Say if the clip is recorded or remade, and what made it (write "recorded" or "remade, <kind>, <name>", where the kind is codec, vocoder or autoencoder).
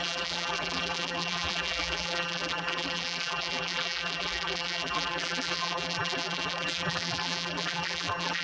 remade, vocoder, BigVGAN v2